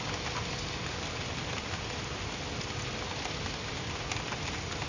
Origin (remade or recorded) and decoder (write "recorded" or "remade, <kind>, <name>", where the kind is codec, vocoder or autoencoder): recorded